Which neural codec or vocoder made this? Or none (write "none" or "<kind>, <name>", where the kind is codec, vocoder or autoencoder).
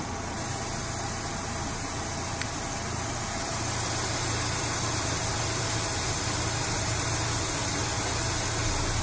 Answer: none